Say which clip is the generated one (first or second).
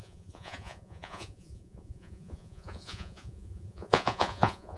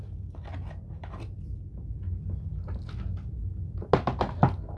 first